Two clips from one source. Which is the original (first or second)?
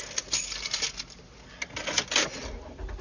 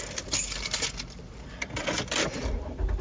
first